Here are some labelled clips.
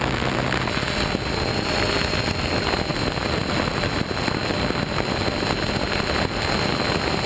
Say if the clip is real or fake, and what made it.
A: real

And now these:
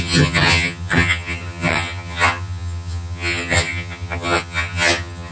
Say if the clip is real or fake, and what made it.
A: fake, vocoder, HiFi-GAN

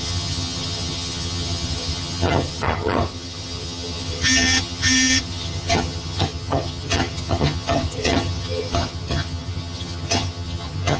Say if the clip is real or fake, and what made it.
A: fake, vocoder, HiFi-GAN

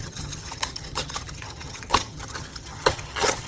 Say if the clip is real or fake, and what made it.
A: fake, vocoder, HiFi-GAN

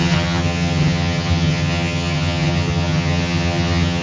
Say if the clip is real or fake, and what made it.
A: fake, vocoder, HiFi-GAN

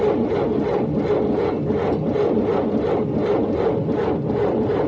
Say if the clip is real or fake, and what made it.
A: real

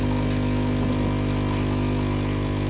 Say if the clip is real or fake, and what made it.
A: real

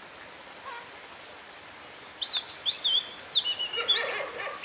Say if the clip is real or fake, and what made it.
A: real